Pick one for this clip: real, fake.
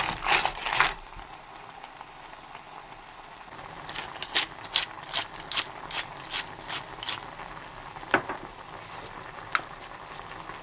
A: real